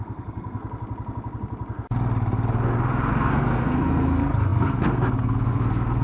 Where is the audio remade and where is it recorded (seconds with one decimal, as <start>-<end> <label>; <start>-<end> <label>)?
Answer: 0.0-0.6 remade; 0.6-3.1 recorded; 3.1-6.0 remade